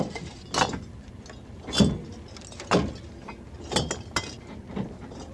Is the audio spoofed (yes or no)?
no